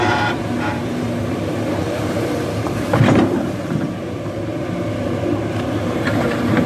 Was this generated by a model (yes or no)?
yes